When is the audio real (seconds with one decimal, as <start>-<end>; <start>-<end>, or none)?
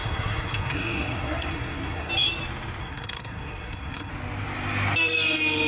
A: 2.1-2.8; 4.1-5.7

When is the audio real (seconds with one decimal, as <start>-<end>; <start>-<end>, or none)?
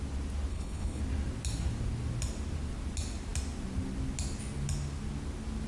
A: 0.0-0.5; 1.0-5.7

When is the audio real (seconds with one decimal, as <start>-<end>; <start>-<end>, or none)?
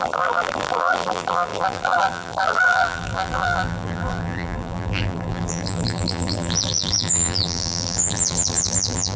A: none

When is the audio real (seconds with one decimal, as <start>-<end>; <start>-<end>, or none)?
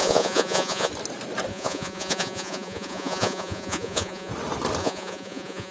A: 0.9-1.5; 4.3-4.8